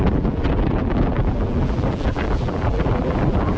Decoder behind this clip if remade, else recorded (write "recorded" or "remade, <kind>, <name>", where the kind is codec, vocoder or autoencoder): remade, vocoder, BigVGAN v2